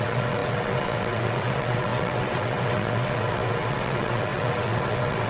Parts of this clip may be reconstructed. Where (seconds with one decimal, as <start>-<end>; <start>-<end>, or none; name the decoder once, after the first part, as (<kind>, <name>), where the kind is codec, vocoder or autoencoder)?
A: 0.0-5.3 (vocoder, WaveNeXt)